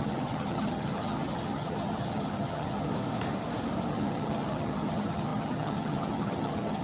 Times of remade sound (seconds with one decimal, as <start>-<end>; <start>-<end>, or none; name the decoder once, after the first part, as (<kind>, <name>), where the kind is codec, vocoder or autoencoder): 0.0-2.9 (vocoder, HiFi-GAN); 3.9-6.8